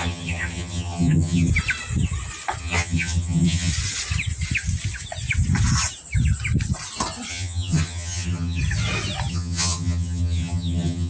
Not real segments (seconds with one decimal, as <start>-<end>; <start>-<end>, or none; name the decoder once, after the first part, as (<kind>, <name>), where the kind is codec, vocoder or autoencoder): 0.0-1.5 (vocoder, HiFi-GAN); 2.6-3.7; 7.3-8.6; 9.3-11.1